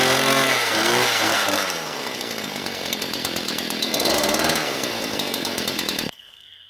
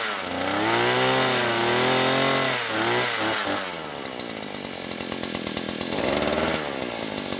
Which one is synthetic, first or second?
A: first